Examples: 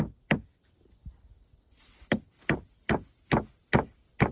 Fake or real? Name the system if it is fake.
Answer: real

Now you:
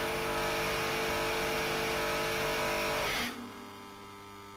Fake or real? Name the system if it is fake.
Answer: real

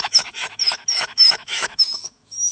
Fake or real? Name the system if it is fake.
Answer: fake, autoencoder, DAC-VAE